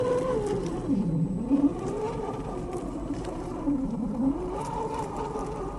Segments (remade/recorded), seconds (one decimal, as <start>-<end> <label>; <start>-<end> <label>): 0.0-1.7 recorded; 1.7-5.2 remade; 5.2-5.8 recorded